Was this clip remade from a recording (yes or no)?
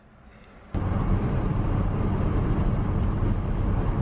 no